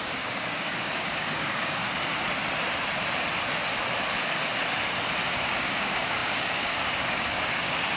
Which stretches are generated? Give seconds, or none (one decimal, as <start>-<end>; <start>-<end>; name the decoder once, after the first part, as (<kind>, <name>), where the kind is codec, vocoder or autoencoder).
0.0-1.8 (codec, DAC); 5.3-8.0